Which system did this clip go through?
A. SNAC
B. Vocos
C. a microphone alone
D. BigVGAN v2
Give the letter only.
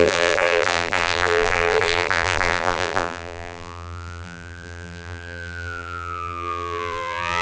D